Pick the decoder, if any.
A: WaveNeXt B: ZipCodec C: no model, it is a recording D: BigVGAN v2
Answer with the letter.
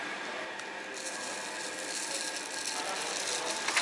C